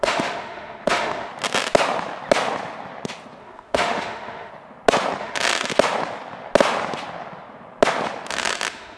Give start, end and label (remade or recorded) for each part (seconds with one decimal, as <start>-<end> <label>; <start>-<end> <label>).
0.0-1.3 remade; 1.3-3.4 recorded; 3.4-4.5 remade; 4.5-5.2 recorded; 5.2-5.7 remade; 5.7-8.3 recorded; 8.3-9.0 remade